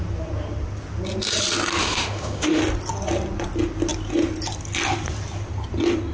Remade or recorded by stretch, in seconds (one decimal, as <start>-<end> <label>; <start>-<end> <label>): 0.0-1.8 recorded; 1.8-2.6 remade; 2.6-6.1 recorded